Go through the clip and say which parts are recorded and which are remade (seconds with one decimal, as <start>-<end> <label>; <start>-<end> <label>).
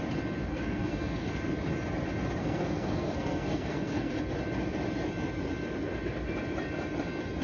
0.0-0.5 recorded; 0.5-1.3 remade; 1.3-2.4 recorded; 2.4-4.2 remade; 4.2-7.4 recorded